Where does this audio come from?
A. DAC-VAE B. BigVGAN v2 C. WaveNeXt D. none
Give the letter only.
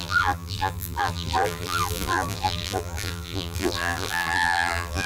B